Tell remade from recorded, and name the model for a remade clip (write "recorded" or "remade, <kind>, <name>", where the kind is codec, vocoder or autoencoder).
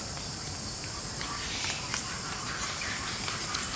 recorded